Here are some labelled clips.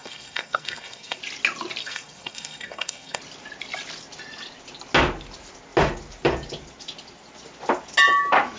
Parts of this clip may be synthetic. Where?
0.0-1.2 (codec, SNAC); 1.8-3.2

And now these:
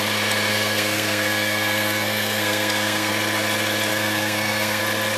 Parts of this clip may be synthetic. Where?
0.5-3.1 (codec, SNAC); 3.9-4.8

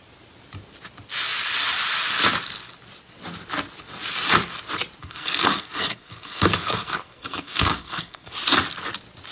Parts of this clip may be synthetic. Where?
5.0-8.3 (codec, SNAC)